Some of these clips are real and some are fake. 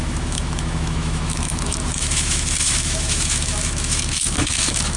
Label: fake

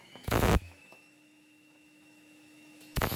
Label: fake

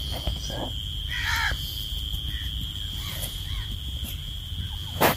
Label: real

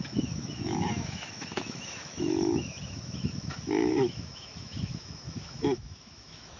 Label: fake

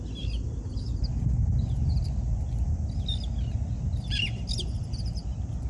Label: real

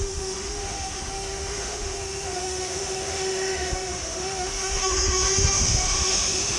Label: fake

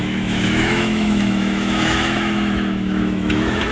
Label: fake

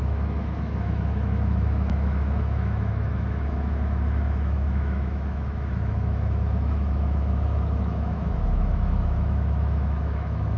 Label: fake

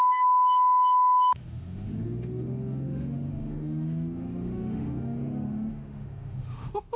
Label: fake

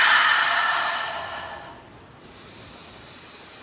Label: real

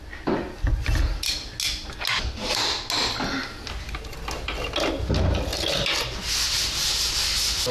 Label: real